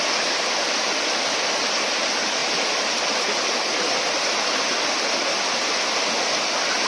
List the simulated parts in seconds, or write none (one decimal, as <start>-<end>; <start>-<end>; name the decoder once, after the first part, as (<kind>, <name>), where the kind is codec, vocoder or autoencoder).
none